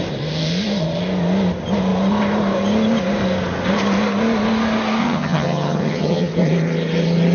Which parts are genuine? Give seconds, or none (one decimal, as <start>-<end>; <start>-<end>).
0.0-5.0; 6.3-7.3